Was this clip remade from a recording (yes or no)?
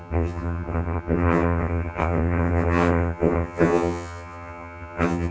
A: yes